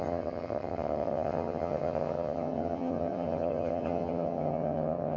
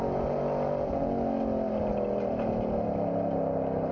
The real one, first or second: second